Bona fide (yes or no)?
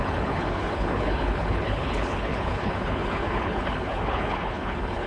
no